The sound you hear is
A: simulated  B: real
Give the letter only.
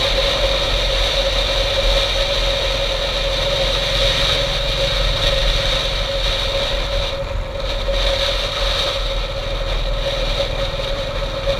B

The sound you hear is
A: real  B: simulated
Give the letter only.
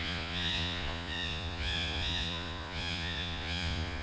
B